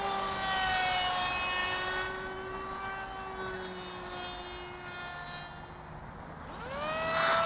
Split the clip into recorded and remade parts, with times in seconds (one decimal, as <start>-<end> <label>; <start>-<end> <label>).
0.0-1.6 recorded; 1.6-2.8 remade; 2.8-7.5 recorded

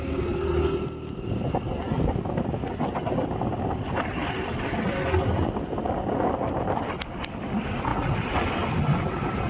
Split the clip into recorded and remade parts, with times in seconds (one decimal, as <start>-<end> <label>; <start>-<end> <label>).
0.0-9.5 recorded

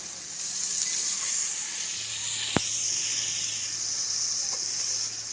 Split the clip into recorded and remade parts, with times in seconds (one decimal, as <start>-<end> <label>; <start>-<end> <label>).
0.0-5.3 recorded

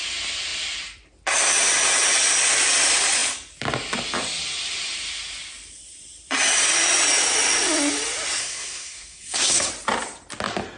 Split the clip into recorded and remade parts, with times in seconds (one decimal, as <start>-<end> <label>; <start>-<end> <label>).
0.0-8.4 recorded; 8.4-9.7 remade; 9.7-10.8 recorded

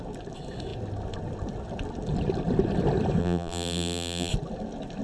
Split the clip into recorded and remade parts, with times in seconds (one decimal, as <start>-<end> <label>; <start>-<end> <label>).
0.0-3.2 recorded; 3.2-4.3 remade; 4.3-5.0 recorded

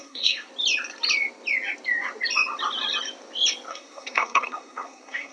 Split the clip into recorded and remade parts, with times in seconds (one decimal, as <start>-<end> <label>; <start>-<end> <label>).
0.0-0.5 remade; 0.5-3.7 recorded; 3.7-5.3 remade

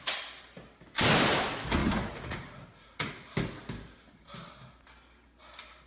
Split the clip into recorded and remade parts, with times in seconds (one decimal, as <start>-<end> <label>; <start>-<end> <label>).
0.0-1.8 recorded; 1.8-3.1 remade; 3.1-5.9 recorded

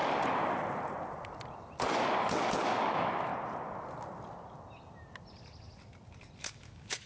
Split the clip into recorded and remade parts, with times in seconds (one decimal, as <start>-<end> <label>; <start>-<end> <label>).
0.0-2.9 recorded; 2.9-3.3 remade; 3.3-6.4 recorded; 6.4-7.1 remade